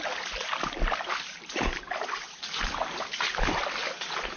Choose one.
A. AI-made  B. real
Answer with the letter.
B